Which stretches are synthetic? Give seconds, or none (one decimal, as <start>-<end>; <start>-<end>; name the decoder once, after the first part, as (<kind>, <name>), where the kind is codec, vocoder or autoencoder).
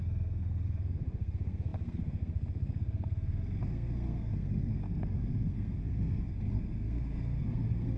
0.0-8.0 (codec, SNAC)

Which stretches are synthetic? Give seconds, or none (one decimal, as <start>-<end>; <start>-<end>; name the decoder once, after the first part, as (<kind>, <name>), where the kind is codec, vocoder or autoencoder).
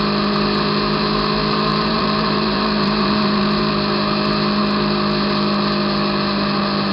1.7-3.6 (vocoder, BigVGAN v2)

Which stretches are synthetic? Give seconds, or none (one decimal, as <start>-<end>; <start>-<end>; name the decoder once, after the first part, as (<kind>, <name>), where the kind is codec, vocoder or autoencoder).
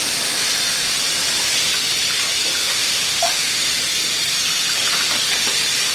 2.6-3.7 (autoencoder, DAC-VAE)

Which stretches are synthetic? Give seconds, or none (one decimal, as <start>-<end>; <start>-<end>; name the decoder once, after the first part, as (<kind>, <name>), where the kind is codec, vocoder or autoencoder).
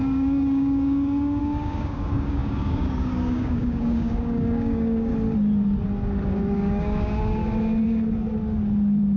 0.0-5.1 (codec, DAC); 6.3-7.4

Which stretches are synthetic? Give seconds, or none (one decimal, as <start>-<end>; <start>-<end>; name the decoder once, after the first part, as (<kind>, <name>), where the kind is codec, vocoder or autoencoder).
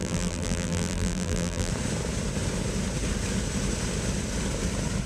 0.0-1.7 (vocoder, BigVGAN v2)